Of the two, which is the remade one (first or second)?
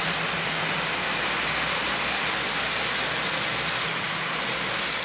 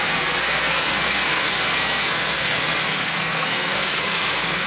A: second